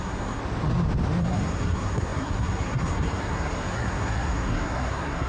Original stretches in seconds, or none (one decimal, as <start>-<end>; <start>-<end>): 0.4-1.2

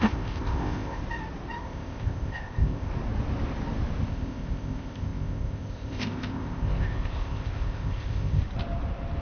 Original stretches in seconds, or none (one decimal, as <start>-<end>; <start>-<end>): 1.0-1.6; 2.9-4.1; 8.4-9.2

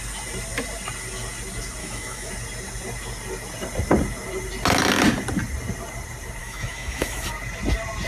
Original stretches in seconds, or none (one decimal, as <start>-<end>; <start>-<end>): 0.0-1.8; 2.3-6.4; 7.3-8.1

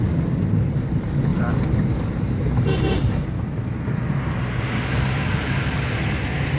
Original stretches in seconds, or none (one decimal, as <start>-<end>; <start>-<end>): 0.0-1.3; 5.3-6.6